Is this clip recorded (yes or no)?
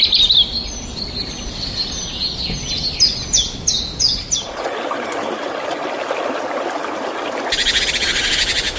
yes